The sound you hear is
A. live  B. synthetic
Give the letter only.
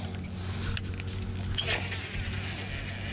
A